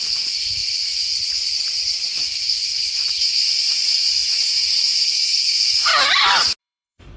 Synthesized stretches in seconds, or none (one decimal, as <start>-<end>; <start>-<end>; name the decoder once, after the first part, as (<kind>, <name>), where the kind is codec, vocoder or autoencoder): 0.0-1.1 (autoencoder, DAC-VAE); 2.1-5.9; 6.6-7.2